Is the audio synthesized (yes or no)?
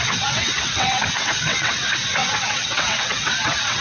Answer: yes